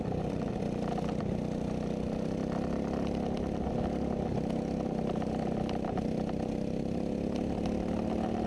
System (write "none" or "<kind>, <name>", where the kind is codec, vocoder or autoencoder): none